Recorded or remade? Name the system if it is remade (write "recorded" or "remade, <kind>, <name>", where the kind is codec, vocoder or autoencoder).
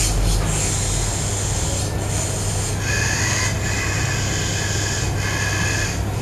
recorded